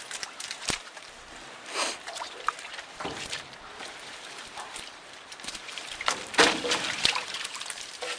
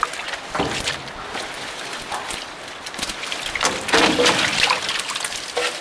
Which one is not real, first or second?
first